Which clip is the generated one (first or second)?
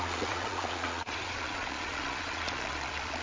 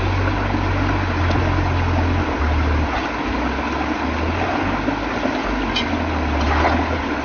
first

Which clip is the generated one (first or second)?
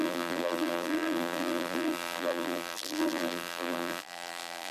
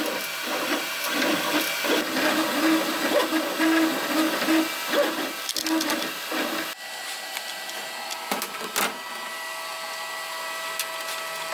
first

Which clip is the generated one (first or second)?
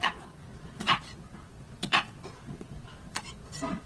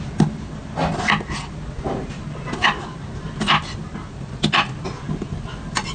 first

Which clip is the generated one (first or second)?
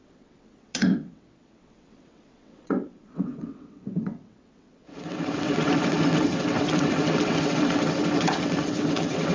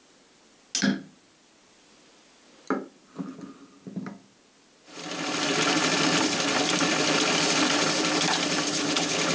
first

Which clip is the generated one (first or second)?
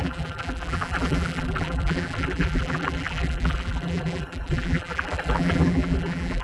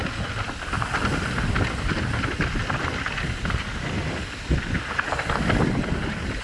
first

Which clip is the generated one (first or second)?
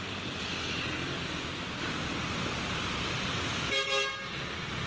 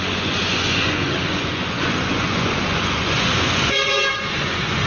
second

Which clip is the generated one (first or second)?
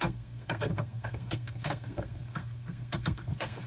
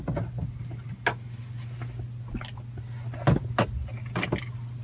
first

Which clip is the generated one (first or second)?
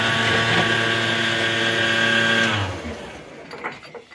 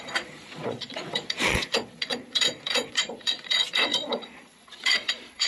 second